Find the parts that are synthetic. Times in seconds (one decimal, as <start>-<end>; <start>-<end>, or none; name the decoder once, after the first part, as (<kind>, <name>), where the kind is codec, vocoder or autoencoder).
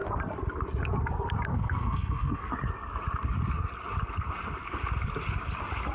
1.5-2.5 (codec, SNAC)